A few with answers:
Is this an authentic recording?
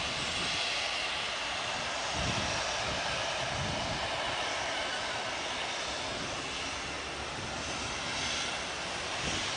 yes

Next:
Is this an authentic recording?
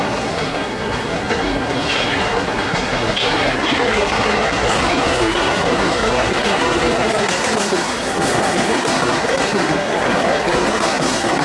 no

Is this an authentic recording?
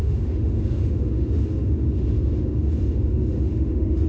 no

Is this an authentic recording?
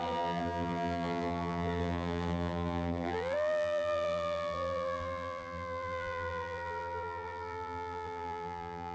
no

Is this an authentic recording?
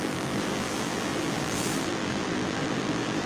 no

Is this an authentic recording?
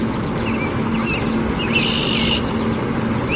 yes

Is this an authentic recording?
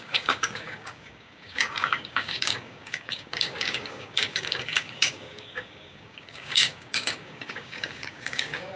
no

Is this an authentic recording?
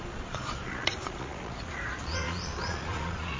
no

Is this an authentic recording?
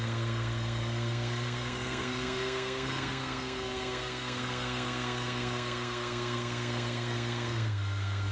no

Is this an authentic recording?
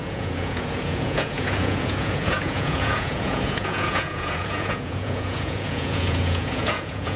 no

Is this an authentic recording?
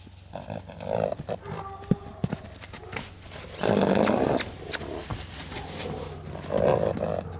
yes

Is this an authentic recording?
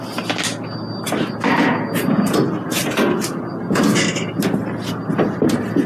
yes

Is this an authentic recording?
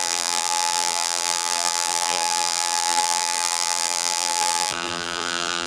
no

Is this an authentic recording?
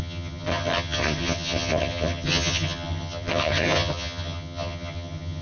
no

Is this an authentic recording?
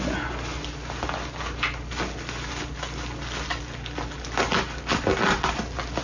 yes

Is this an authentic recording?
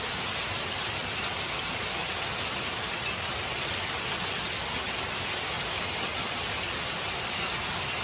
yes